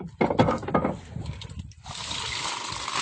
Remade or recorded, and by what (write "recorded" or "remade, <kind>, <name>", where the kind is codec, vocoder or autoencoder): recorded